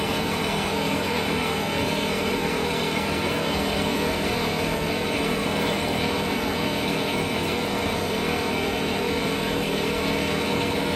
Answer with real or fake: fake